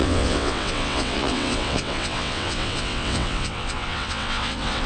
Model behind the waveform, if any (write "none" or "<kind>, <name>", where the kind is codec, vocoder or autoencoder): vocoder, WaveNeXt